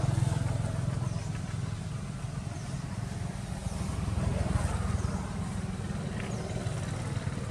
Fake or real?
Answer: real